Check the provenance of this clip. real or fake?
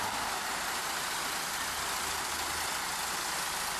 real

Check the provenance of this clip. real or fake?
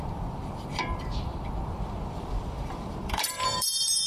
fake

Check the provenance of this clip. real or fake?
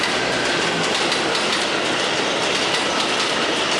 real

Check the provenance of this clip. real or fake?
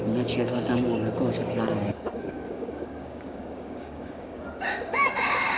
fake